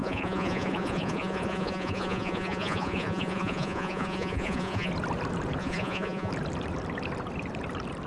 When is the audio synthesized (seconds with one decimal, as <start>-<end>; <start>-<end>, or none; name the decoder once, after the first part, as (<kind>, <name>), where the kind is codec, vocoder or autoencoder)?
0.0-4.9 (vocoder, Vocos); 5.6-6.3